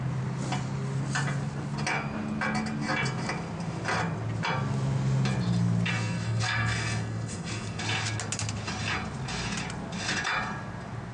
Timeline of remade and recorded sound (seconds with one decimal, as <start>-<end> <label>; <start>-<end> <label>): 0.0-5.9 recorded; 5.9-7.8 remade; 7.8-11.1 recorded